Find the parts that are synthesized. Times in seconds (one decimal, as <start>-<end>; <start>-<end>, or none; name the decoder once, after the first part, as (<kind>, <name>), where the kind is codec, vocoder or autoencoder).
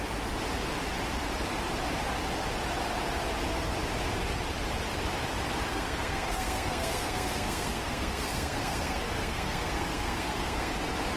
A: 5.7-10.7 (codec, SNAC)